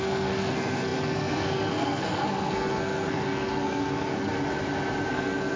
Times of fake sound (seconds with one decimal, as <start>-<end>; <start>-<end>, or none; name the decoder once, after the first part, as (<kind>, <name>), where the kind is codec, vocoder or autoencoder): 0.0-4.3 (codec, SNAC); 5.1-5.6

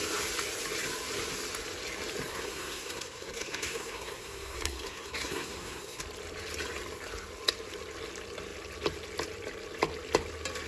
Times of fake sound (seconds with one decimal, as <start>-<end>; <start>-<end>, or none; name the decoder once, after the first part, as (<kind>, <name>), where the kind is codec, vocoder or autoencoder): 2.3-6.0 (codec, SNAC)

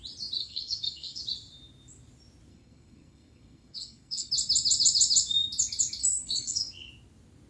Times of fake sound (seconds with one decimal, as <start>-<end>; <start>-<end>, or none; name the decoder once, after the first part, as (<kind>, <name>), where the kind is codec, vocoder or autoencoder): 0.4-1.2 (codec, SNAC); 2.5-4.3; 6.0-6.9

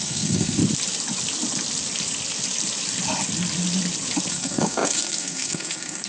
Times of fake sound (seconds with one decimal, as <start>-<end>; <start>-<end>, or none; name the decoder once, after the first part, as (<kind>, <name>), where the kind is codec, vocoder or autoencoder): 0.0-0.6 (codec, SNAC); 4.3-6.1

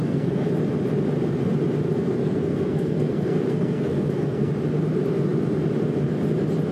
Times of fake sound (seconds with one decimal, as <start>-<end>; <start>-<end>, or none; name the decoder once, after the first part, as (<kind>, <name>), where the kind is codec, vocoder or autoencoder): 0.0-0.5 (codec, SNAC); 2.2-4.5

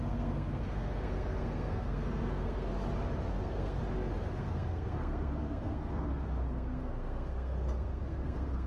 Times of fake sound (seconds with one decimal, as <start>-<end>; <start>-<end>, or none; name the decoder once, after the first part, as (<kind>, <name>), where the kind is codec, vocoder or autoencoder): 0.0-2.7 (codec, SNAC); 3.3-3.8; 4.3-8.7